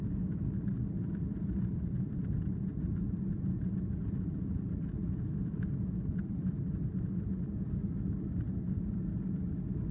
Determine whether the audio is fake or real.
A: real